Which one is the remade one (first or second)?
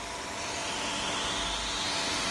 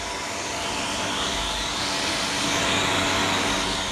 second